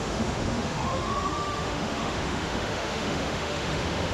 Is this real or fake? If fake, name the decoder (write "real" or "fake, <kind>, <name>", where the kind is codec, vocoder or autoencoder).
fake, autoencoder, DAC-VAE